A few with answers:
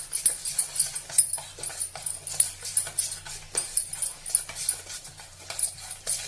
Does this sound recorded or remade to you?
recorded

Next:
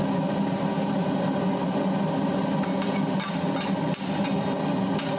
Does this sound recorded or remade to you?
recorded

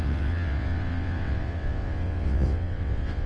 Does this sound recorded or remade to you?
remade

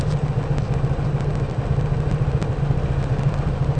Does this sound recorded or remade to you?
recorded